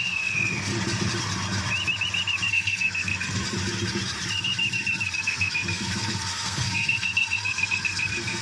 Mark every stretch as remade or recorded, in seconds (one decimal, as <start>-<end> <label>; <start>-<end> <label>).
0.0-0.7 remade; 0.7-2.5 recorded; 2.5-3.4 remade; 3.4-5.2 recorded; 5.2-8.4 remade